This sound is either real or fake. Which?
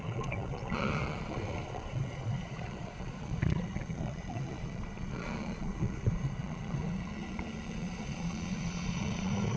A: fake